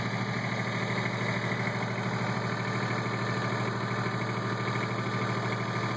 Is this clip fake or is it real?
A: real